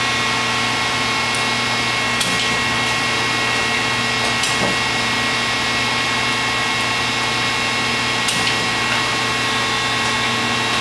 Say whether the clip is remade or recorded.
recorded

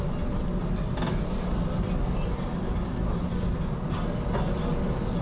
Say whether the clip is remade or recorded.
recorded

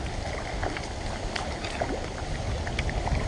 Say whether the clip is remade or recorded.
recorded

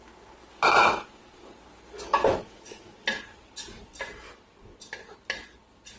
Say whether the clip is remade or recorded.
recorded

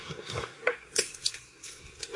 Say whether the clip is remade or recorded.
remade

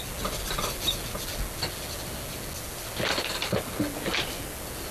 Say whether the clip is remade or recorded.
recorded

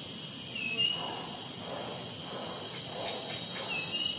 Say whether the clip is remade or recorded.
recorded